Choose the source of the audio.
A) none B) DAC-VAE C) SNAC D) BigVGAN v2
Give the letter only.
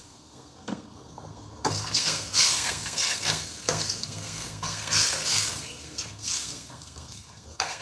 C